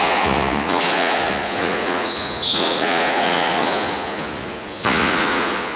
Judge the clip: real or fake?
fake